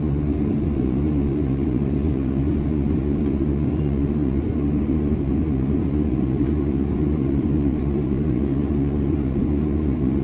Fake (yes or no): yes